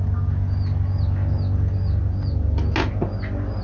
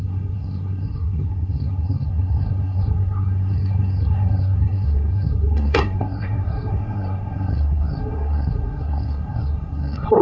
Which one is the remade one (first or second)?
second